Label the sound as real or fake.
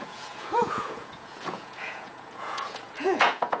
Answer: fake